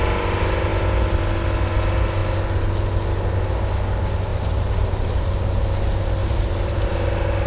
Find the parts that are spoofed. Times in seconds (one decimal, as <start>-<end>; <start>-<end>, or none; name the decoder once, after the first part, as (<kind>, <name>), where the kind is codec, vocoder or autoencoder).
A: 4.3-5.3 (vocoder, BigVGAN v2); 6.2-6.8